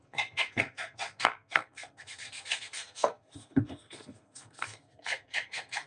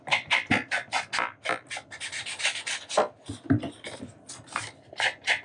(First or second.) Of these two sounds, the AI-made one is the first